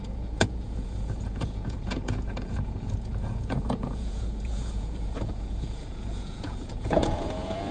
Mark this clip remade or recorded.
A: remade